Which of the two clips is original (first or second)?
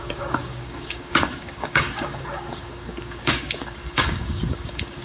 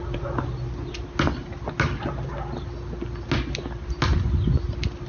second